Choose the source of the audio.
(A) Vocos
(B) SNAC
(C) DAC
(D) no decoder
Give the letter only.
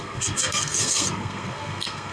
B